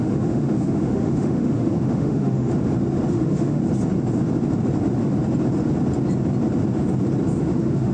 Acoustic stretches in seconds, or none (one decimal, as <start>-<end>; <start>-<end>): 2.5-3.1; 3.6-7.4